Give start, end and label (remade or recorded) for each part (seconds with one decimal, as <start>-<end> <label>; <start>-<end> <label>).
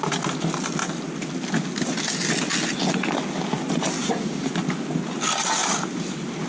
0.0-6.5 recorded